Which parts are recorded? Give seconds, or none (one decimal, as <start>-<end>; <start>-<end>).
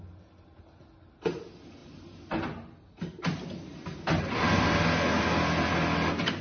0.0-6.4